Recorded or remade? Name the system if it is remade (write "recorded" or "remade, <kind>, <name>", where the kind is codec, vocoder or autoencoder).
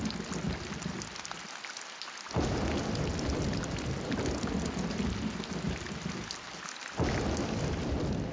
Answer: recorded